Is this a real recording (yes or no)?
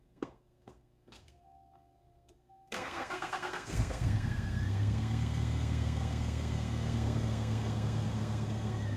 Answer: no